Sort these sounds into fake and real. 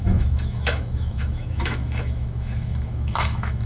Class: fake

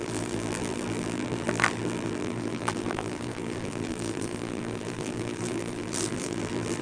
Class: fake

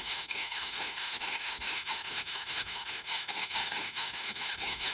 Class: fake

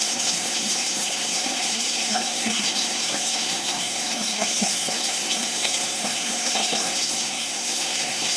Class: fake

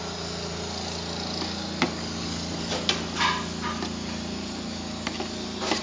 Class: real